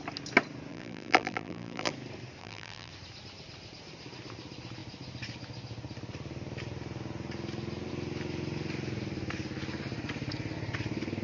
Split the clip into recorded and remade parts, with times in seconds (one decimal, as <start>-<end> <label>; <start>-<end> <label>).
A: 0.0-0.7 recorded; 0.7-1.9 remade; 1.9-2.4 recorded; 2.4-2.9 remade; 2.9-11.2 recorded